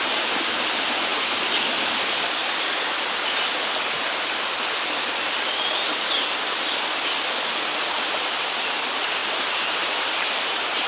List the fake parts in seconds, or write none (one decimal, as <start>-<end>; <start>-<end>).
9.2-10.9